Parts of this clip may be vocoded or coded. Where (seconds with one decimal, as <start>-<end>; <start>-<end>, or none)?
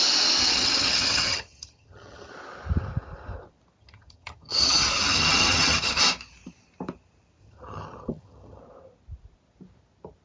0.4-2.3; 3.8-6.0; 7.4-8.6